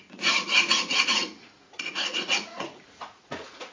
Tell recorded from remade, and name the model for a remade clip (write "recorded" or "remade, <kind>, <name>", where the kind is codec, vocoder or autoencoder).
remade, vocoder, Vocos